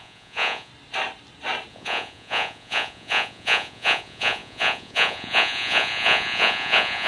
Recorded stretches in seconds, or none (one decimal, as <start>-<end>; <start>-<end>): 0.7-1.7